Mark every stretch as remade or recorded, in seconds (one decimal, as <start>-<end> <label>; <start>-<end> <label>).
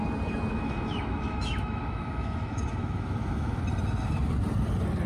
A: 0.0-0.5 recorded; 0.5-3.6 remade; 3.6-5.1 recorded